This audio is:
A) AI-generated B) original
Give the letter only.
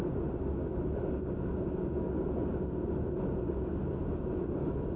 B